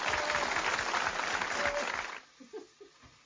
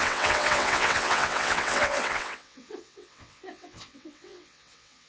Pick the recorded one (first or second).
first